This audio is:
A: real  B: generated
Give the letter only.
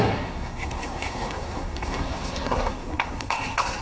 B